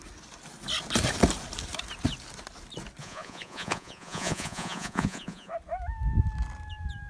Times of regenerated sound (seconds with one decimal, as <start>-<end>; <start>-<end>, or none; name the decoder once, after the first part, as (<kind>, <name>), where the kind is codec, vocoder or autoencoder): 3.0-5.5 (vocoder, Vocos)